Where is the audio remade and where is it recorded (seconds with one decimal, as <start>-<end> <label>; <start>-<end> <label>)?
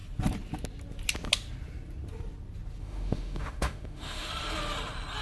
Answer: 0.0-2.8 recorded; 2.8-4.3 remade; 4.3-5.2 recorded